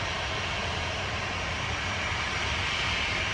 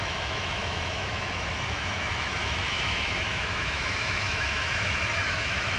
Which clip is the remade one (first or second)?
second